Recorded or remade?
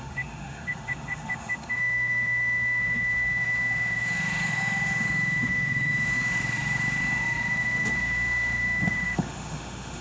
remade